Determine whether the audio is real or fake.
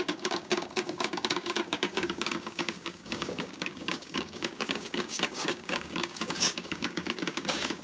fake